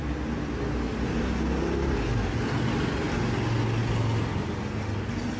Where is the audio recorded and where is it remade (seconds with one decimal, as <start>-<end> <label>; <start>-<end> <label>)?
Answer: 0.0-5.4 recorded